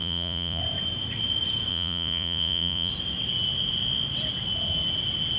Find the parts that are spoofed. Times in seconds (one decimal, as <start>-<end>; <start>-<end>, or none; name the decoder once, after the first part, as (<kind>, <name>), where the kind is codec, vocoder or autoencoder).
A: 0.0-0.6 (vocoder, Vocos); 1.7-2.9